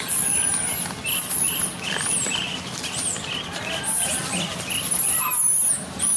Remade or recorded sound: recorded